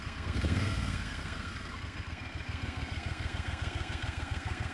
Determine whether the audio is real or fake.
fake